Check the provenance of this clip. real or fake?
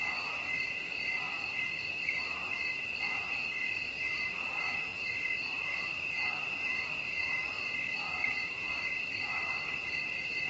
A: fake